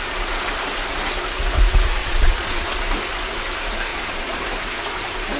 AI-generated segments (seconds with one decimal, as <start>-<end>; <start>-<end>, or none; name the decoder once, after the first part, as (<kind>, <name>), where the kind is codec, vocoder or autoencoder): 2.0-2.8 (vocoder, Vocos); 3.9-4.4